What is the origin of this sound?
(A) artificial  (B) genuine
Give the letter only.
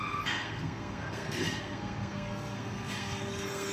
A